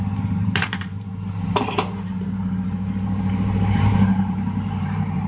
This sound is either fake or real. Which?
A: fake